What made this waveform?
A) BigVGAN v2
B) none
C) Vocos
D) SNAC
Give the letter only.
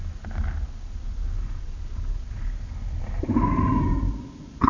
B